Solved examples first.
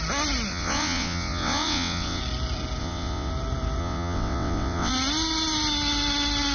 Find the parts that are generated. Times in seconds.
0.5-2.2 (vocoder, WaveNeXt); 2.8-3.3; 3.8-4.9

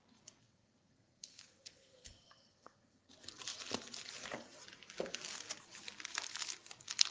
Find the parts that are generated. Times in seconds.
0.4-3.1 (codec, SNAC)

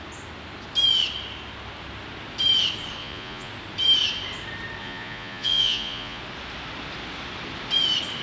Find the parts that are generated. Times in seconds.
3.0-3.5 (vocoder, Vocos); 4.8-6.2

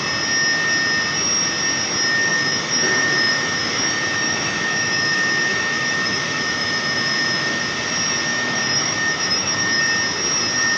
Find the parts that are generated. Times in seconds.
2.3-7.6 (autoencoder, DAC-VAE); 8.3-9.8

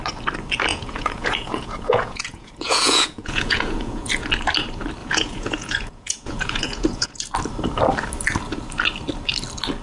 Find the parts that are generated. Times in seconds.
0.7-4.3 (vocoder, Vocos); 5.0-7.3

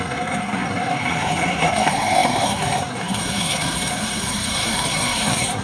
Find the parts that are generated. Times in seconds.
0.0-5.6 (codec, SNAC)

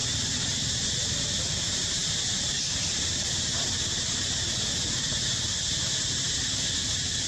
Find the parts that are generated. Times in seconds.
none

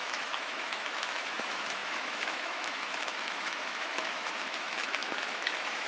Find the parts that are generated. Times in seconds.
0.0-5.9 (autoencoder, DAC-VAE)